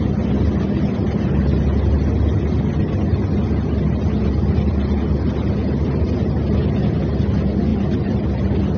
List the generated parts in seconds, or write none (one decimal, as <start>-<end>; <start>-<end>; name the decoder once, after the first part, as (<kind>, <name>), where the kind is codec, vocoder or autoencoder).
none